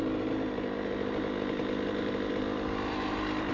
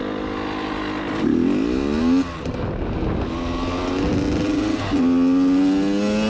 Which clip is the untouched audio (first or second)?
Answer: second